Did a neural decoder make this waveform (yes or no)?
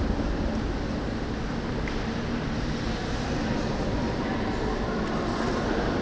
no